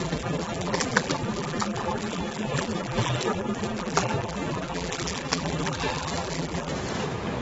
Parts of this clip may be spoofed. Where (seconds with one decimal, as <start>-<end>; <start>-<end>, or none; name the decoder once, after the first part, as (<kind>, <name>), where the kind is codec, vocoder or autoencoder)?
0.0-6.7 (vocoder, BigVGAN v2)

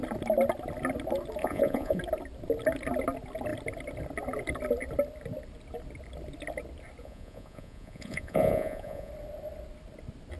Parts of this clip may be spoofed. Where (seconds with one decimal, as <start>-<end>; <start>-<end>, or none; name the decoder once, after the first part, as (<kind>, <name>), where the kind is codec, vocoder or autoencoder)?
1.4-2.0 (vocoder, Vocos); 7.0-9.1

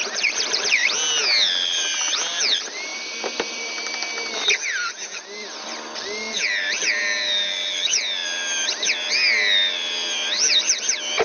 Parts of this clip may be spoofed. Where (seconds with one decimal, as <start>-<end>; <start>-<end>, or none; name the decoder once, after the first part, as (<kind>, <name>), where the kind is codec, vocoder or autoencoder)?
0.0-0.7 (vocoder, BigVGAN v2); 2.9-4.1

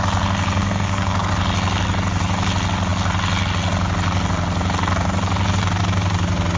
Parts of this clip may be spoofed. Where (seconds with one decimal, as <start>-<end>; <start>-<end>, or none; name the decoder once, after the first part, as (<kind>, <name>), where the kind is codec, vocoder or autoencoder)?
0.6-1.3 (codec, SNAC)

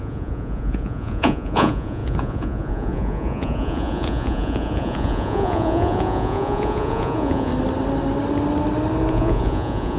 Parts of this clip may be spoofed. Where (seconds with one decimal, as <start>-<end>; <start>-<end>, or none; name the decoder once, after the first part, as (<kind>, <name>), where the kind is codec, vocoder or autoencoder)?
0.0-7.5 (vocoder, Vocos); 9.1-10.0

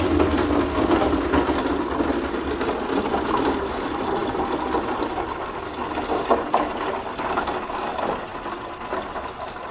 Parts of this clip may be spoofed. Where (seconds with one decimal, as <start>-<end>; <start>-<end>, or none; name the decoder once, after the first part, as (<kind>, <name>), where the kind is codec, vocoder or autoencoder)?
none

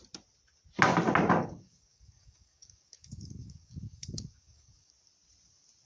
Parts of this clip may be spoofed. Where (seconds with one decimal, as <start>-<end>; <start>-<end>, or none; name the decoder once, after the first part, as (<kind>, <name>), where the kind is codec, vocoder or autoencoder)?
1.4-4.9 (codec, DAC)